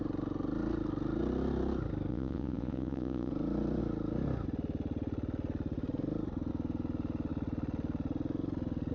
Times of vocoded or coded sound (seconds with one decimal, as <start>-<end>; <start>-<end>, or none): 2.1-3.3

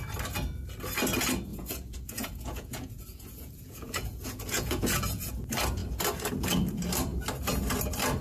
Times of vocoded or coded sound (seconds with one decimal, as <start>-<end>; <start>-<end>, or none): 1.5-5.3